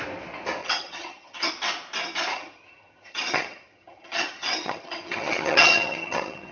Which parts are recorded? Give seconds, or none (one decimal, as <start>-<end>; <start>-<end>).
0.0-0.6; 1.5-2.3